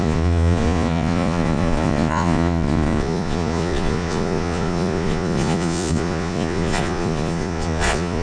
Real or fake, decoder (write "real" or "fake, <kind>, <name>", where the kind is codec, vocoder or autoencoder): fake, vocoder, Vocos